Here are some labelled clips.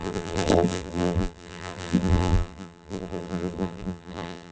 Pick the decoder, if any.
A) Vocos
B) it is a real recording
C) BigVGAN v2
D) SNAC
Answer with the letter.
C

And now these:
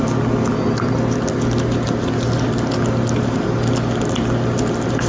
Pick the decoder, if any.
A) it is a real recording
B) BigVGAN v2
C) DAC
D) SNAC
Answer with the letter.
A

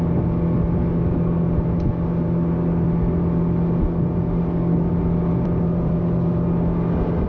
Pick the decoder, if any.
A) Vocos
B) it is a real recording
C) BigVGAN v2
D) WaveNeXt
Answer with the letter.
B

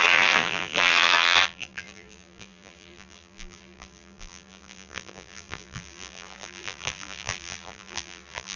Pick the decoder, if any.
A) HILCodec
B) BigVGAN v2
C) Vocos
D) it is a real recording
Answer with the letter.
B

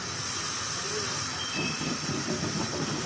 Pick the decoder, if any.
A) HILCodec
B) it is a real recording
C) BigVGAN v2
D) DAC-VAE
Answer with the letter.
C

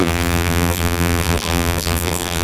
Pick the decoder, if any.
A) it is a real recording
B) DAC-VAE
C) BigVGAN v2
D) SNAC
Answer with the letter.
C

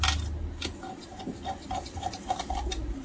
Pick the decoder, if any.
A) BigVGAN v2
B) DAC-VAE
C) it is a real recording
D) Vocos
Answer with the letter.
C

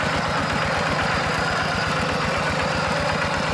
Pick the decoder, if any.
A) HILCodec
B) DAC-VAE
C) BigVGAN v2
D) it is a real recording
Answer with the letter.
D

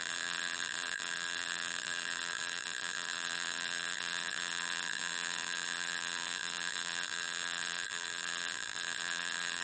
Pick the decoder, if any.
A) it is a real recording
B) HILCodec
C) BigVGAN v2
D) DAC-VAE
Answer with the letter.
C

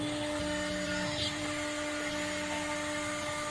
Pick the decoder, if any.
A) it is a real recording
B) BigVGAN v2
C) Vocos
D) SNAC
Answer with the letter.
A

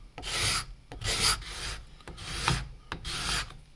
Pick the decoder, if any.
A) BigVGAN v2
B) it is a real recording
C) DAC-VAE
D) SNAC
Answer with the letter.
B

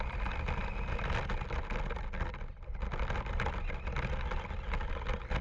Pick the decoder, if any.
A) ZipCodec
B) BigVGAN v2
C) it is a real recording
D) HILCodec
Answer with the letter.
C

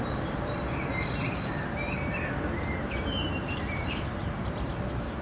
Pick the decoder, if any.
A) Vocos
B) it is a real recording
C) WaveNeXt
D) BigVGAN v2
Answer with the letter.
D